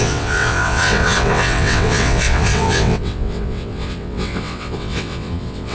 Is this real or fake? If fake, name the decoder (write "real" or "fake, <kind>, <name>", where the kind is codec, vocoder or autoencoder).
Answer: fake, vocoder, WaveNeXt